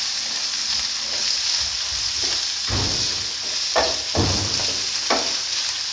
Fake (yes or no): no